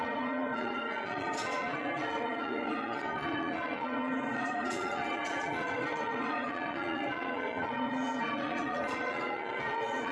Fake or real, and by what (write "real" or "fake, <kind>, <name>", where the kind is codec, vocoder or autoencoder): fake, vocoder, Vocos